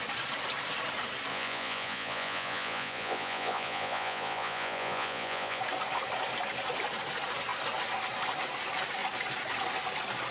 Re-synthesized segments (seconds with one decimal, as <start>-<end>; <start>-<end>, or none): 1.3-5.6